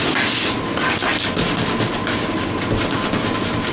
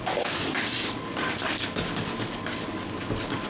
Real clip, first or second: first